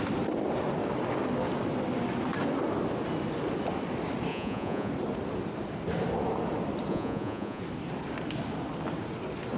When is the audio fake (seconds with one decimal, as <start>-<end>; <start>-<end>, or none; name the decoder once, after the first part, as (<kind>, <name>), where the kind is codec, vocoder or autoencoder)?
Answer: 4.3-4.9 (vocoder, Vocos); 6.9-7.6